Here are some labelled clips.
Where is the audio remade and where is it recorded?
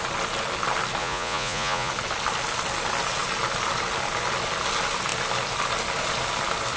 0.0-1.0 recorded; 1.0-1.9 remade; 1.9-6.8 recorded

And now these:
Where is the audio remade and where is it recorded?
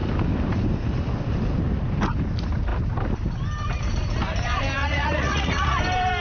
0.0-4.8 recorded; 4.8-5.8 remade; 5.8-6.2 recorded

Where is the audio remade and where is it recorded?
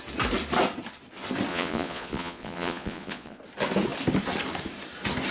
0.0-1.5 recorded; 1.5-3.4 remade; 3.4-5.3 recorded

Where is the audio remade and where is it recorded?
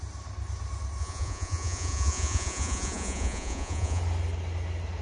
0.0-1.0 recorded; 1.0-4.0 remade; 4.0-5.0 recorded